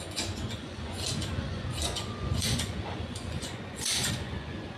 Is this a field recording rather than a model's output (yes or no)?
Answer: no